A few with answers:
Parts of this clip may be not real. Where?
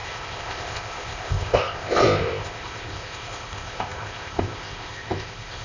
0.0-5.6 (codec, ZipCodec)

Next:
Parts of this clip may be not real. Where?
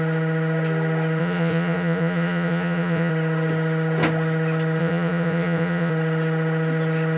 1.2-3.1 (vocoder, Vocos); 4.8-5.9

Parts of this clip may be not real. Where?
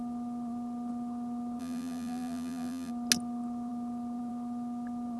1.6-2.9 (vocoder, BigVGAN v2)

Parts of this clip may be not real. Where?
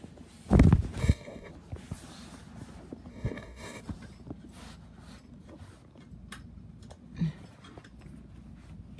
1.0-1.5 (codec, DAC); 3.1-3.8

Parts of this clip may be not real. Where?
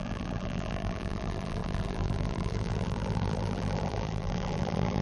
0.0-5.0 (vocoder, BigVGAN v2)